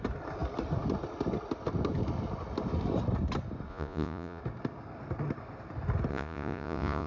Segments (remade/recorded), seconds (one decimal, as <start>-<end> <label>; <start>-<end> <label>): 0.0-3.7 recorded; 3.7-4.4 remade; 4.4-6.1 recorded; 6.1-7.1 remade